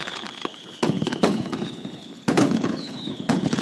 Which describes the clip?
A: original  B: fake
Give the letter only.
B